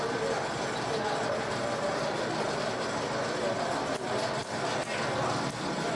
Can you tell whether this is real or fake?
real